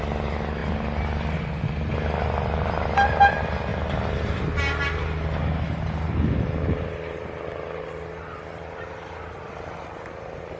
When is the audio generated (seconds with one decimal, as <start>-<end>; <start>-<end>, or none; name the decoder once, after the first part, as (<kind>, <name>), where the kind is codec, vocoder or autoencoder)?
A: none